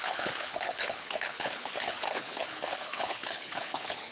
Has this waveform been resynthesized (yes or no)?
yes